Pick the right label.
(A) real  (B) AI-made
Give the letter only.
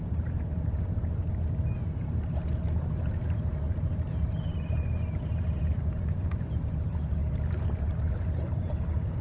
B